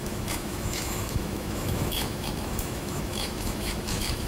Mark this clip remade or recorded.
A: remade